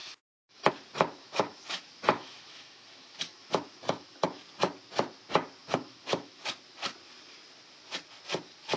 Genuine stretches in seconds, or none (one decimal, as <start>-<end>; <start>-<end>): 0.7-1.2; 4.4-5.6; 6.4-8.8